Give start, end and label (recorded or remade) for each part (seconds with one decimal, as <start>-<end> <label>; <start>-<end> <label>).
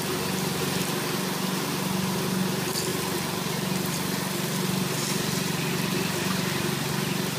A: 0.0-7.4 recorded